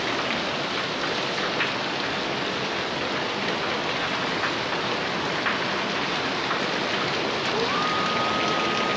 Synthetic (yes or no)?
no